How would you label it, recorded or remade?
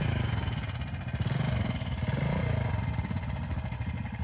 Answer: recorded